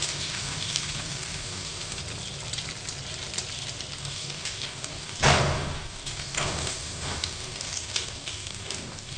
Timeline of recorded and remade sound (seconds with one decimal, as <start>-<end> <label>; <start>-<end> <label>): 0.0-2.0 remade; 2.0-4.0 recorded; 4.0-9.2 remade